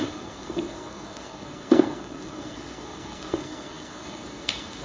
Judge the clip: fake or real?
fake